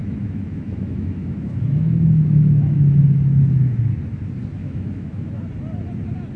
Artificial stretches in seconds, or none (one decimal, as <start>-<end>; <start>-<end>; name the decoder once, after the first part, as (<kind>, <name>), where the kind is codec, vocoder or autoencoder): 0.0-3.8 (autoencoder, DAC-VAE); 4.6-5.3

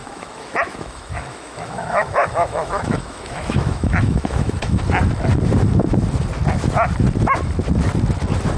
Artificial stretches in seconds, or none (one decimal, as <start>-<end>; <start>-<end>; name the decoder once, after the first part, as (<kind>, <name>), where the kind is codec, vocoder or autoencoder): 0.0-4.8 (autoencoder, DAC-VAE)